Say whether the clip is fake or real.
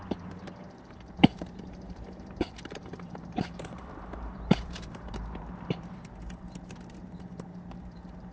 fake